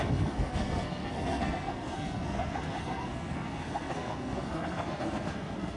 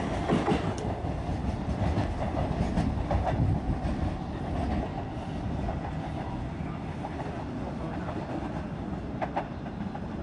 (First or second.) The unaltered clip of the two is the second